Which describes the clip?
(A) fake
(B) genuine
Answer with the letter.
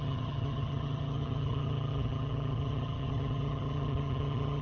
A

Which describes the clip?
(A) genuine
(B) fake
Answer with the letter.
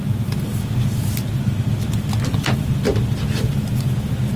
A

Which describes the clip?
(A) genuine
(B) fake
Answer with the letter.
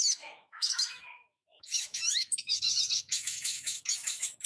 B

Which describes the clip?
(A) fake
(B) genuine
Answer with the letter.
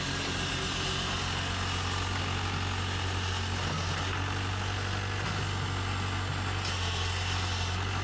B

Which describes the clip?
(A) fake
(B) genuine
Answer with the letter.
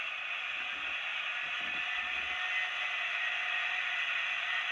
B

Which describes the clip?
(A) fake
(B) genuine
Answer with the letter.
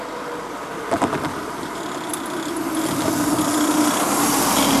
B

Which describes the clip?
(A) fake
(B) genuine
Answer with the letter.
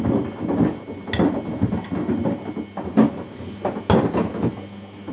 B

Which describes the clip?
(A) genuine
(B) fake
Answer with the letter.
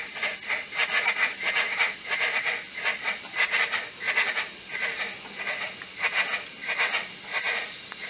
A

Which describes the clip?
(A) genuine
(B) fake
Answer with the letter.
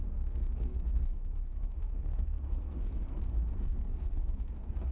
B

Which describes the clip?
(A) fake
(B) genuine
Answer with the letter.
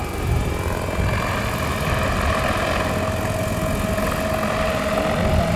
B